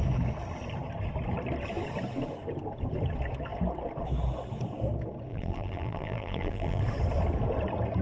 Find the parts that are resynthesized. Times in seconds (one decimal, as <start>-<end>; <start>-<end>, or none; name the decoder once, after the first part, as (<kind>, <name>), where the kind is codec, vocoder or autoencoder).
5.3-6.8 (vocoder, BigVGAN v2)